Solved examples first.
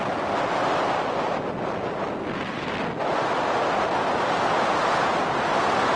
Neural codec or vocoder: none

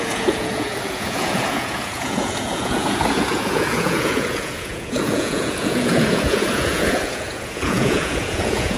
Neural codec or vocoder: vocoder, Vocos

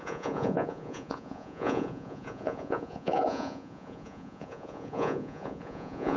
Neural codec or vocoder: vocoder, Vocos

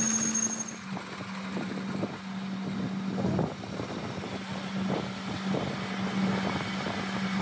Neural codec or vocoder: none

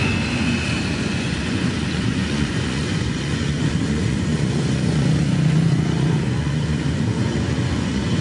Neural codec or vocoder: vocoder, Vocos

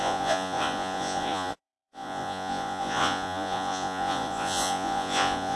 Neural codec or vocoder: vocoder, Vocos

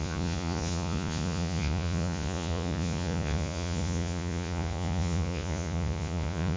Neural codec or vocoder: vocoder, Vocos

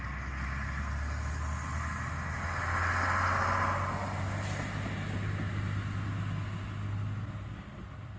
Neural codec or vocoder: none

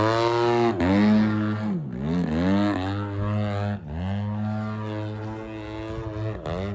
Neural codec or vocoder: none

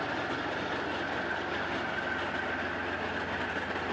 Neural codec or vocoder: none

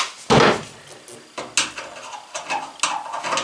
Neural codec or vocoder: none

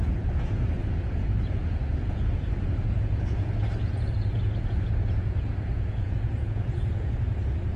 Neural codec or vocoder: vocoder, Vocos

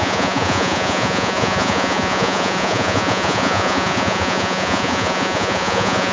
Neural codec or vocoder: vocoder, Vocos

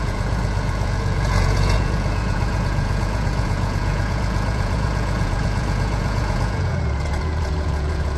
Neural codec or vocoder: vocoder, Vocos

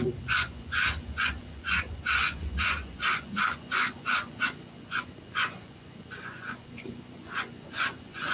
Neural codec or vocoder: vocoder, Vocos